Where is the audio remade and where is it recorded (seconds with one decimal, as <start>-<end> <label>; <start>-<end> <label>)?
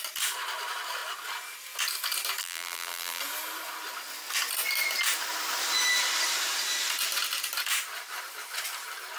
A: 0.0-2.4 recorded; 2.4-3.2 remade; 3.2-9.2 recorded